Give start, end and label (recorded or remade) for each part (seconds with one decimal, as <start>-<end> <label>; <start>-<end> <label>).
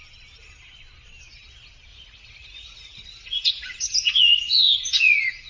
0.0-1.9 recorded; 1.9-5.5 remade